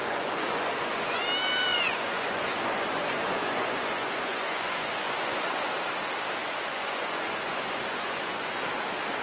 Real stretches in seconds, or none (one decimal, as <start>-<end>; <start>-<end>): 1.2-1.7; 5.7-6.4; 8.6-9.2